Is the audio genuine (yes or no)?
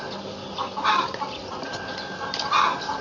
yes